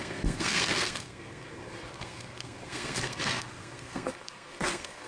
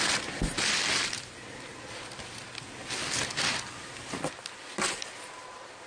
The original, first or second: second